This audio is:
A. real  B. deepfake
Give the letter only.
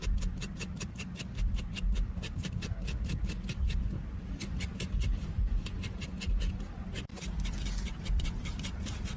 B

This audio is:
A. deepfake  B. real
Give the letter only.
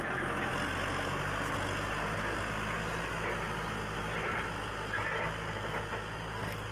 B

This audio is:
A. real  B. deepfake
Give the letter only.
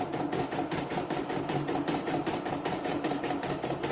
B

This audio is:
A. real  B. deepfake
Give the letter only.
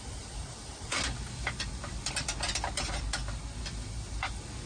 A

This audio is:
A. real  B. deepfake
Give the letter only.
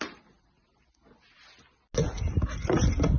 A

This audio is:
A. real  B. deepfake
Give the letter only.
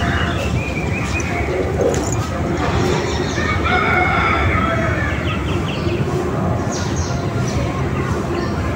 A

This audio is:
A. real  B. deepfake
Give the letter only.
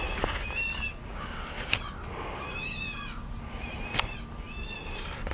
A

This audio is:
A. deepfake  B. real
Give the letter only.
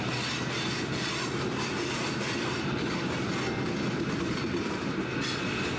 B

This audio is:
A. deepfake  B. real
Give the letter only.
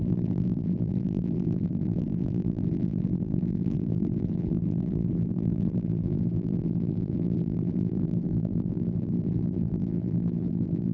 A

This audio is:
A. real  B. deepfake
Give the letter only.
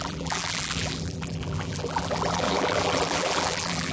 B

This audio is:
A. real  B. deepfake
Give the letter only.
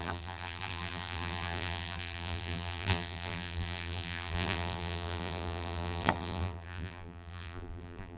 B